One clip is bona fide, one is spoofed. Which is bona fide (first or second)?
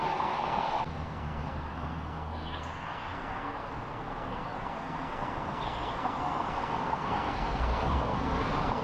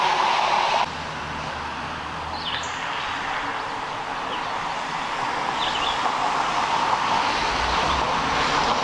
second